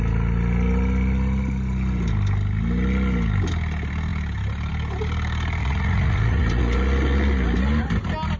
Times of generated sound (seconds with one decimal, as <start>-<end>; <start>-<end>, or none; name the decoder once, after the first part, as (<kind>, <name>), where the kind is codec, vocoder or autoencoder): 5.6-6.6 (vocoder, Vocos)